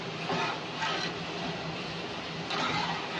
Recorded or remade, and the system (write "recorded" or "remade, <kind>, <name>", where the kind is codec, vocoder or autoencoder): recorded